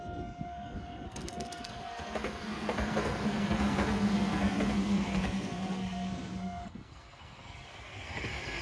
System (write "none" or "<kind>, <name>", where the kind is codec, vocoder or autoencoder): codec, SNAC